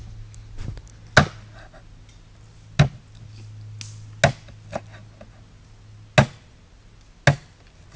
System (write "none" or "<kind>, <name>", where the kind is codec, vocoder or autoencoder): none